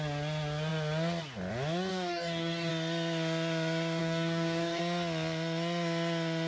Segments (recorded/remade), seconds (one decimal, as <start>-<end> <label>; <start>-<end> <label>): 0.0-1.9 recorded; 1.9-2.7 remade; 2.7-4.0 recorded; 4.0-4.8 remade; 4.8-6.5 recorded